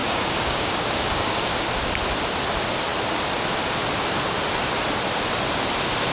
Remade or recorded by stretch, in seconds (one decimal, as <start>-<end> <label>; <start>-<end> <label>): 0.0-1.5 remade; 1.5-6.1 recorded